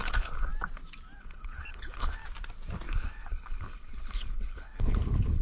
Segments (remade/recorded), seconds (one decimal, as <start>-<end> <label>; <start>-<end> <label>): 0.0-0.5 remade; 0.5-1.2 recorded; 1.2-2.2 remade; 2.2-2.9 recorded; 2.9-5.4 remade